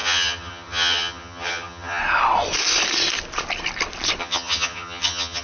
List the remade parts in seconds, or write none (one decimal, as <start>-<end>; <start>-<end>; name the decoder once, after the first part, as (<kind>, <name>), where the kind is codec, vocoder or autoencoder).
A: 0.0-2.0 (vocoder, HiFi-GAN); 4.2-5.4